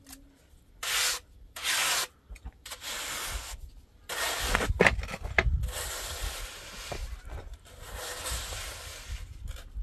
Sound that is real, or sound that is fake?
real